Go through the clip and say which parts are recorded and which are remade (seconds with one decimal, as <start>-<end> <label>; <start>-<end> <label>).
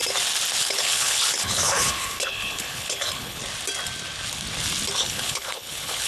0.0-0.6 recorded; 0.6-3.4 remade; 3.4-5.0 recorded; 5.0-6.1 remade